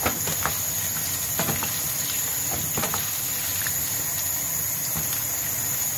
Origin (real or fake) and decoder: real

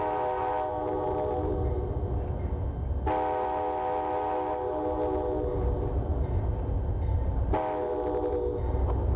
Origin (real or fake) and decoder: real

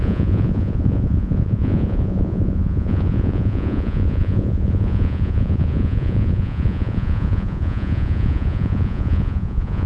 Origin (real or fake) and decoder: fake, vocoder, Vocos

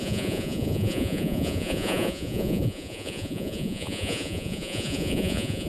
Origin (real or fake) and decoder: fake, vocoder, Vocos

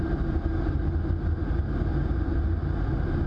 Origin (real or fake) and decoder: real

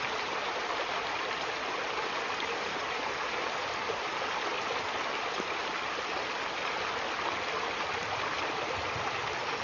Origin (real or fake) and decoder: real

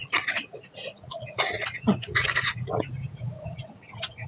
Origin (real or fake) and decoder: fake, vocoder, Vocos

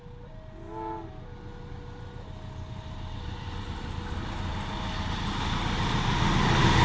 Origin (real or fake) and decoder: real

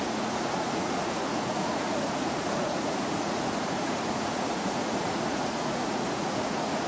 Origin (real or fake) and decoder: fake, vocoder, Vocos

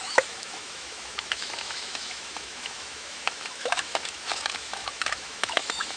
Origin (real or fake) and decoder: fake, autoencoder, DAC-VAE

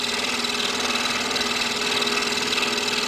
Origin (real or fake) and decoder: real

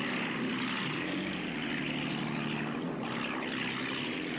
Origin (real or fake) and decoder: real